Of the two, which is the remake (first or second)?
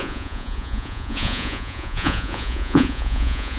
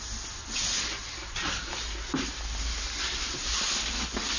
first